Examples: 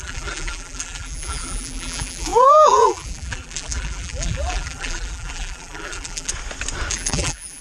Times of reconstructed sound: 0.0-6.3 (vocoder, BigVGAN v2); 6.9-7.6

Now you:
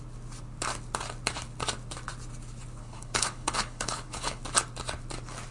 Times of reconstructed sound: 2.8-4.4 (codec, HILCodec)